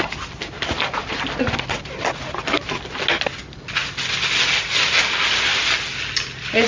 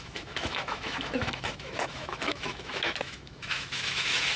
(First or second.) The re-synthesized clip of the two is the second